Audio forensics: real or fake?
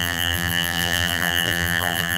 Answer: fake